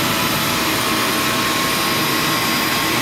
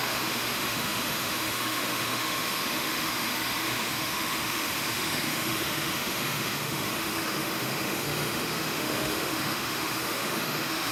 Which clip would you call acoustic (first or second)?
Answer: first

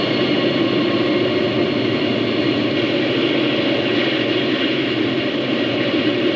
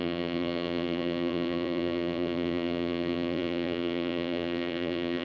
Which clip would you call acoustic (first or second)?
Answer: first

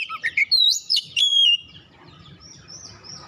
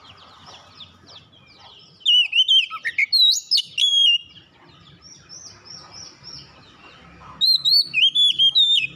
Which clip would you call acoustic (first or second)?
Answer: second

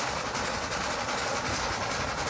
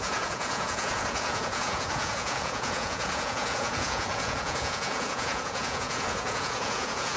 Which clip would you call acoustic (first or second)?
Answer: first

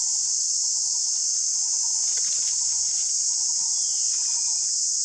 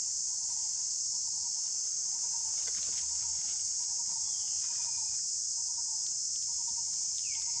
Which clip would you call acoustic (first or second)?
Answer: first